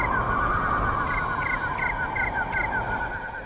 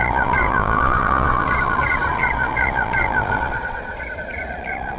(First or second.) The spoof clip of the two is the second